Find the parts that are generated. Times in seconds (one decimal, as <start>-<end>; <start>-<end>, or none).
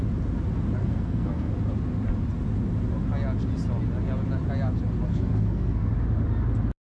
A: 0.8-1.5; 5.1-5.9